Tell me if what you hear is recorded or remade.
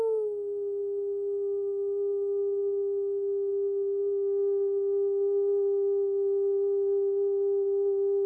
recorded